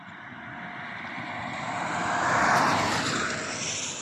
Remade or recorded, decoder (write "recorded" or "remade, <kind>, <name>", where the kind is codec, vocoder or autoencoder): recorded